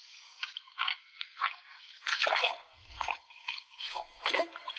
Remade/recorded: remade